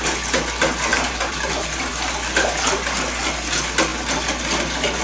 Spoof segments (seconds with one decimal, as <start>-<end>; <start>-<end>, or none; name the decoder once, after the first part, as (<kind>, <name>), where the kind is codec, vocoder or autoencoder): 0.9-1.9 (vocoder, BigVGAN v2)

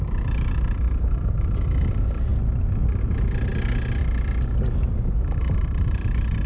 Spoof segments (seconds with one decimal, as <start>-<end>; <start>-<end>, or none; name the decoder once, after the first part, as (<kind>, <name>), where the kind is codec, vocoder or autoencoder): none

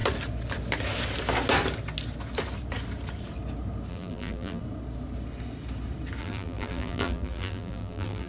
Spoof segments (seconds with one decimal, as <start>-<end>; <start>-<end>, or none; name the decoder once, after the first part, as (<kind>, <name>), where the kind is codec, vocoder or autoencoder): 3.9-4.6 (vocoder, BigVGAN v2); 6.2-8.3

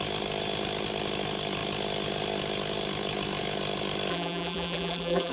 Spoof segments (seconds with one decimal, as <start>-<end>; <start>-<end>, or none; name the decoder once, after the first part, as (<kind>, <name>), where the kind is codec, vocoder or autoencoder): 4.1-5.3 (vocoder, BigVGAN v2)